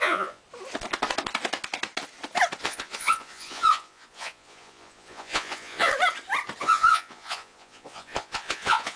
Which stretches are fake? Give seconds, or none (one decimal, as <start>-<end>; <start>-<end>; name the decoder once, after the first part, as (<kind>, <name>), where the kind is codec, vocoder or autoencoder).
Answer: 0.0-0.4 (vocoder, Vocos); 2.6-5.9; 6.6-9.0